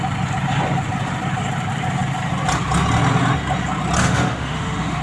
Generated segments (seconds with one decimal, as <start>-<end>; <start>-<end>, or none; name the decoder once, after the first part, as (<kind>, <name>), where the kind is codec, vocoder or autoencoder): 4.0-5.0 (autoencoder, DAC-VAE)